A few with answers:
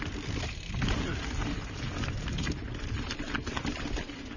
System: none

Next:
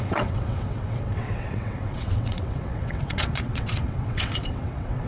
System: vocoder, WaveNeXt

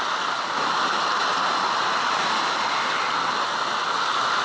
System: none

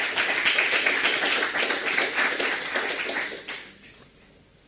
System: none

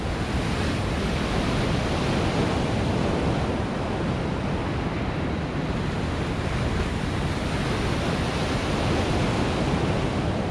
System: none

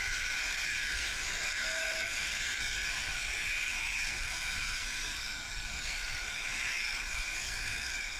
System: codec, SNAC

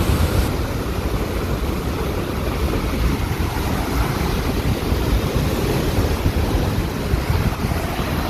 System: vocoder, BigVGAN v2